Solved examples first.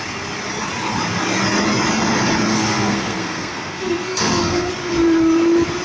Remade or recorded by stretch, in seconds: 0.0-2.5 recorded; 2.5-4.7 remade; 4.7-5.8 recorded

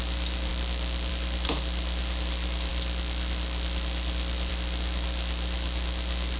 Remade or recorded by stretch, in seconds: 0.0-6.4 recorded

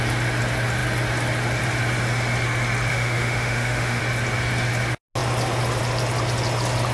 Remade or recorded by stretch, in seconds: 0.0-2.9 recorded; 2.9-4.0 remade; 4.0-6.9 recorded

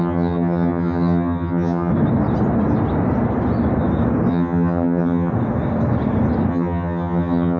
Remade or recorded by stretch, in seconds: 0.0-1.9 remade; 1.9-4.3 recorded; 4.3-5.3 remade; 5.3-6.5 recorded; 6.5-7.6 remade

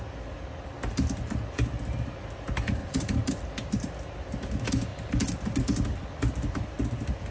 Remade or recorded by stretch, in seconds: 0.0-2.8 recorded; 2.8-3.3 remade; 3.3-4.9 recorded; 4.9-6.0 remade; 6.0-7.3 recorded

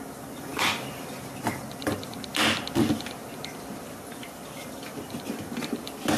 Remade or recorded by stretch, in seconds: 0.0-6.2 recorded